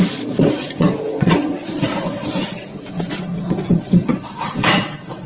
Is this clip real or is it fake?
fake